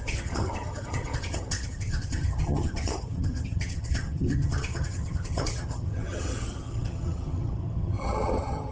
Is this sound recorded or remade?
remade